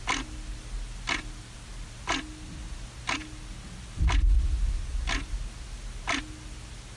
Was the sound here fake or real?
real